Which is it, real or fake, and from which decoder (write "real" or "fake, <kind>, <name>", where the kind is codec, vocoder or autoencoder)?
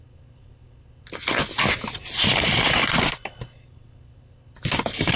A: real